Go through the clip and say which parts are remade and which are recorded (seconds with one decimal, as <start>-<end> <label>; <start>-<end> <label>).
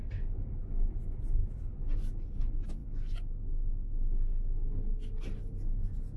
0.0-6.2 recorded